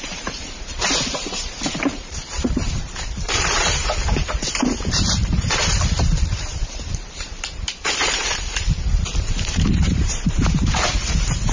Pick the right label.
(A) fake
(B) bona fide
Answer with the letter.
A